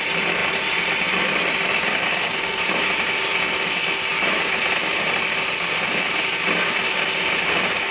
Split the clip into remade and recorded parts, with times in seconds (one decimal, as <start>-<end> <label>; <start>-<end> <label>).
0.0-1.9 recorded; 1.9-2.6 remade; 2.6-7.9 recorded